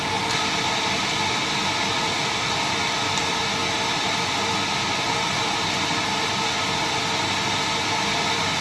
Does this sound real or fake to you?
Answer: real